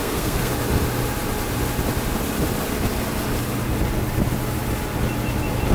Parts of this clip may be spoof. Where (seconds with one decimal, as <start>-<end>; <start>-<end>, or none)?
0.0-0.5